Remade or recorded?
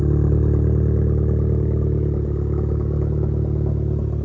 recorded